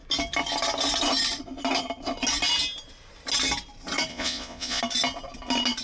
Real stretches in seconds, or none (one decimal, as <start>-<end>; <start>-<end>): 0.0-4.1; 4.8-5.8